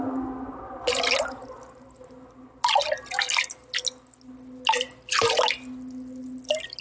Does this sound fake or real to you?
real